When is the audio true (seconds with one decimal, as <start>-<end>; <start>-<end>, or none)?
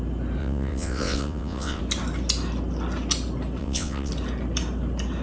0.0-0.4; 1.8-3.6; 4.1-5.2